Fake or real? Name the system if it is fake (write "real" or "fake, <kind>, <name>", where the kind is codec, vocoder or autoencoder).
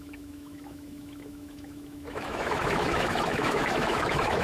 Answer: fake, autoencoder, DAC-VAE